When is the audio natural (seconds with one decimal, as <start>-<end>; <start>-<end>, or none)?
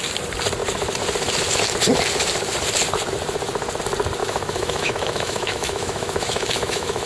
0.0-4.2